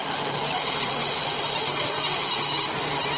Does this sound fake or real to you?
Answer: real